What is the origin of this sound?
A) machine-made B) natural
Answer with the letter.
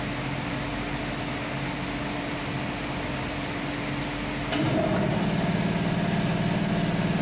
B